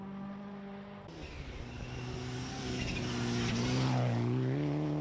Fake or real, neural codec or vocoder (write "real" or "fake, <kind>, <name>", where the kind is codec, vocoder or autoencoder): real